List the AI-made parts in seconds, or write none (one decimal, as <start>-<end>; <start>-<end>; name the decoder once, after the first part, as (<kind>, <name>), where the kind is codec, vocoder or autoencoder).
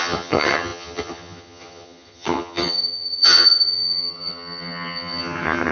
0.0-5.7 (vocoder, HiFi-GAN)